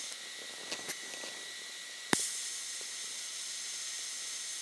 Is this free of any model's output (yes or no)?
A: yes